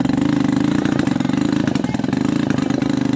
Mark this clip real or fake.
real